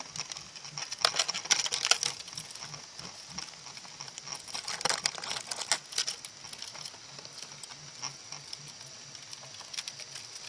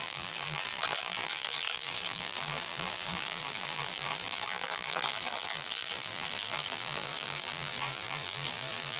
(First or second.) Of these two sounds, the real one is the first